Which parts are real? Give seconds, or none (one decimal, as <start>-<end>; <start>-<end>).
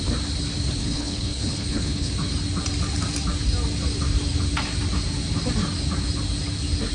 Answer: 0.0-0.8; 2.1-6.9